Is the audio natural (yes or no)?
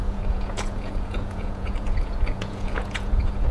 no